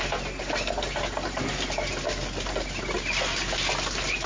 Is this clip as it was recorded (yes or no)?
yes